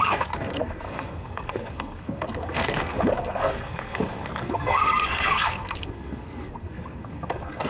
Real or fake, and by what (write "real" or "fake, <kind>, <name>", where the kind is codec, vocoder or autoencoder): fake, codec, SNAC